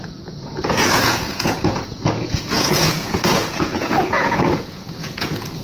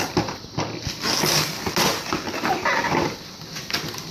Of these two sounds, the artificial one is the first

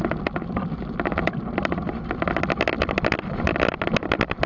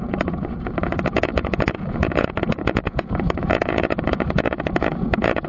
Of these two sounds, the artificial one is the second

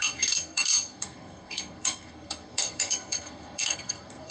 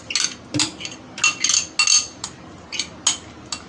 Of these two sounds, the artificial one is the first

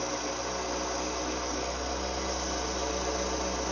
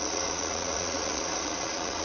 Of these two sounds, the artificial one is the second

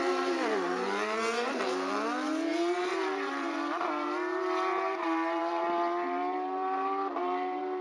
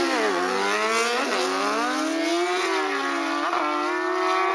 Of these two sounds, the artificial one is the first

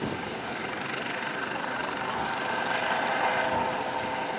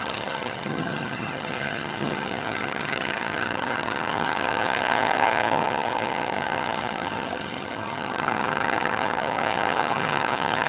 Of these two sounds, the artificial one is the second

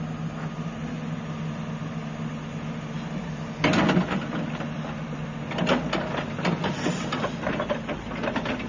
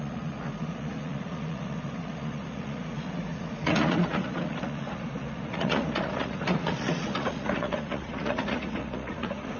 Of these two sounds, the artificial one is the second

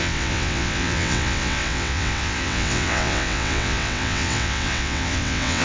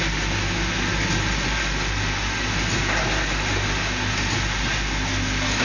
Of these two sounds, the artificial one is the first